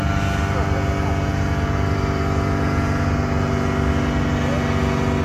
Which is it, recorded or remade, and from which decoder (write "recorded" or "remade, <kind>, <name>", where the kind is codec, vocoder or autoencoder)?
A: recorded